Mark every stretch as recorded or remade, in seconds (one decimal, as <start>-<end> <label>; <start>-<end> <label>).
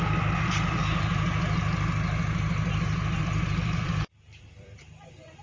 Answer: 0.0-0.8 remade; 0.8-3.2 recorded; 3.2-5.4 remade